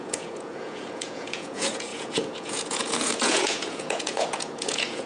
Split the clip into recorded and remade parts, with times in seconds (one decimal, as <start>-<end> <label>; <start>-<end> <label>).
0.0-5.1 remade